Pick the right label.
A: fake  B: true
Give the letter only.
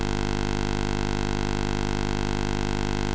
B